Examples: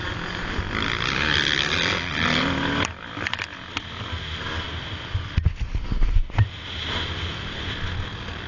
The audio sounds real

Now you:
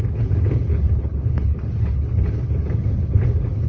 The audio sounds fake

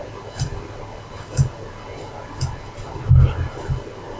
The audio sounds real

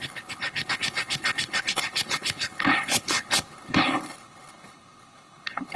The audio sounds fake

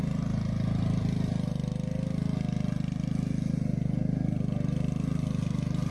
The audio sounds real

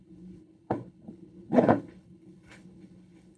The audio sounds fake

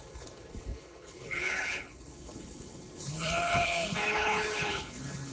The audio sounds fake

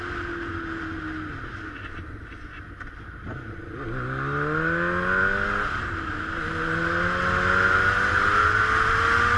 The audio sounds real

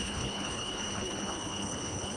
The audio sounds fake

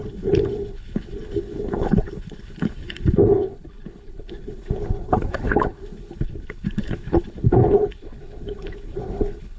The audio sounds fake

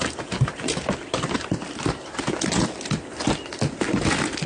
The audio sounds real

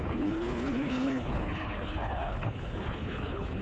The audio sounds fake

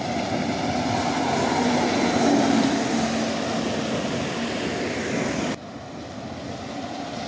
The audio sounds real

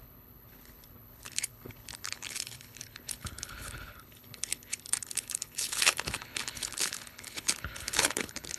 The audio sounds fake